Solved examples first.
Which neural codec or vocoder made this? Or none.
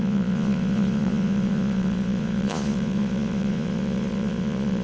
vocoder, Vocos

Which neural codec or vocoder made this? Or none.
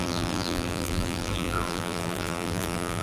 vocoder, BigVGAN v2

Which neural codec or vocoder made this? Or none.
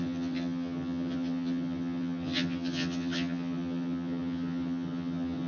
vocoder, HiFi-GAN